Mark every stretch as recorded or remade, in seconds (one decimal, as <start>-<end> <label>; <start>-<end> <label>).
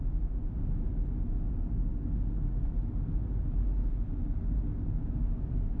0.0-5.8 recorded